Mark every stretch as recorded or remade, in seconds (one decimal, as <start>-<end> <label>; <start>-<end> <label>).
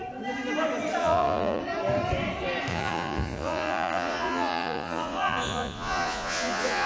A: 0.0-1.0 recorded; 1.0-1.6 remade; 1.6-2.7 recorded; 2.7-6.9 remade